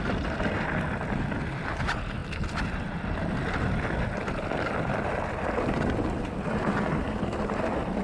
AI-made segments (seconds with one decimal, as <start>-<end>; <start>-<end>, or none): none